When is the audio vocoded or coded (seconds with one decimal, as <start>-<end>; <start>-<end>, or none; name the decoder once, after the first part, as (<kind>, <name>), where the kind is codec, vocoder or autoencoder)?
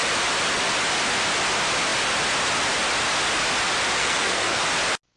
4.0-4.6 (codec, SNAC)